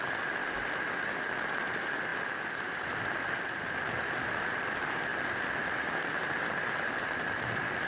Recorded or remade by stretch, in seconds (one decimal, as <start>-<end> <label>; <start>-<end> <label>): 0.0-0.4 remade; 0.4-1.0 recorded; 1.0-5.1 remade; 5.1-6.9 recorded; 6.9-7.9 remade